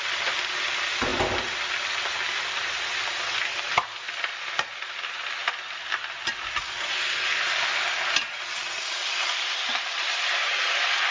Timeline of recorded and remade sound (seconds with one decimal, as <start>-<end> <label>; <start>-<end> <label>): 0.0-11.1 recorded